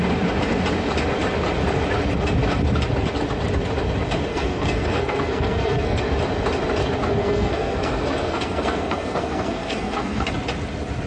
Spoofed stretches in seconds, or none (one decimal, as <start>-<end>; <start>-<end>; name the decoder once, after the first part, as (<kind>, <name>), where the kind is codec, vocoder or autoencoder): 4.3-6.0 (codec, SNAC); 7.2-10.3